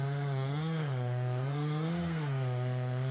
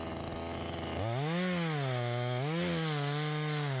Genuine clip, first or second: second